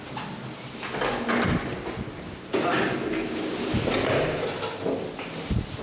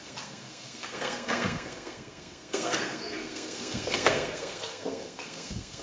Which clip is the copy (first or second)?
second